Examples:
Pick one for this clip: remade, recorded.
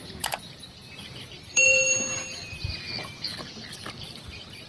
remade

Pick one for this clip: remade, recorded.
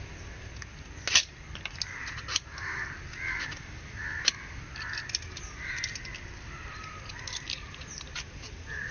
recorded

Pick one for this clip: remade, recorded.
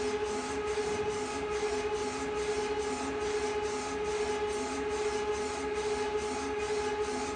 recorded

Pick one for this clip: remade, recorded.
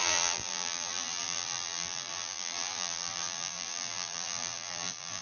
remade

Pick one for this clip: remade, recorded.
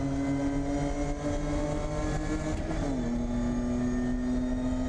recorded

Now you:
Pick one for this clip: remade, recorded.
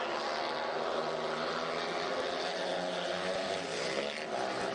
recorded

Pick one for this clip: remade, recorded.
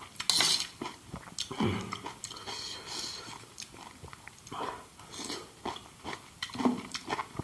recorded